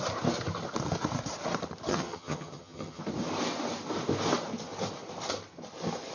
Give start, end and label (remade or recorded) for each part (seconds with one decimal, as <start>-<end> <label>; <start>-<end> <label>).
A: 0.0-1.9 recorded; 1.9-3.0 remade; 3.0-6.1 recorded